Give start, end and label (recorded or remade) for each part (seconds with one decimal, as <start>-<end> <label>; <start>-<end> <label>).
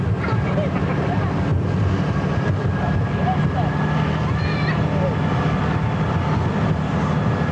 0.0-7.5 recorded